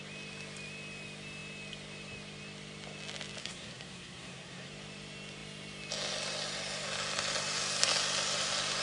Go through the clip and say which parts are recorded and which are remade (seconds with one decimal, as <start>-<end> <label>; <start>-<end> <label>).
0.0-3.4 recorded; 3.4-4.7 remade; 4.7-8.8 recorded